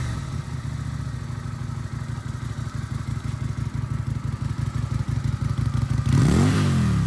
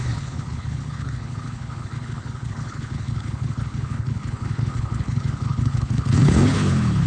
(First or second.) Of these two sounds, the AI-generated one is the second